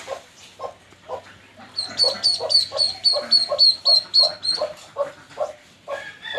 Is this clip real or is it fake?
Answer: real